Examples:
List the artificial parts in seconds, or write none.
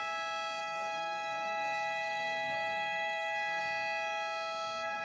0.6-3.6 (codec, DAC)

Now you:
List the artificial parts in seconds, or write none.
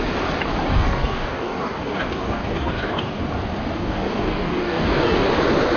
0.7-3.2 (codec, DAC); 3.8-5.3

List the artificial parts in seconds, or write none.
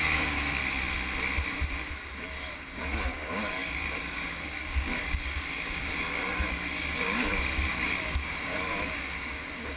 0.0-0.6 (codec, DAC); 1.9-9.8